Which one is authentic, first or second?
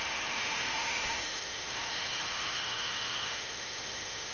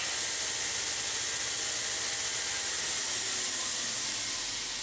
second